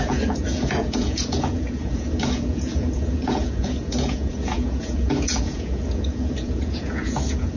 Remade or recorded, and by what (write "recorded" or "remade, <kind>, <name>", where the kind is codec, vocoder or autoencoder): remade, vocoder, Vocos